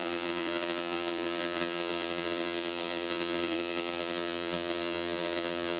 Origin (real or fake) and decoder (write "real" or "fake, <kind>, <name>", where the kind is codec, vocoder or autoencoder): fake, vocoder, BigVGAN v2